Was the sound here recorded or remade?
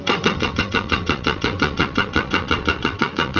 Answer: remade